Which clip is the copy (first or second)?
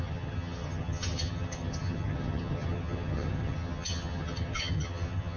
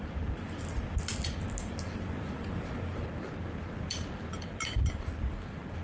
first